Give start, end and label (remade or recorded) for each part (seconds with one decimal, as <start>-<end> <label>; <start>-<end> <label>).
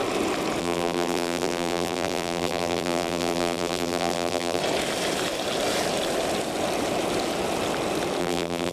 0.0-0.6 recorded; 0.6-4.6 remade; 4.6-8.2 recorded; 8.2-8.7 remade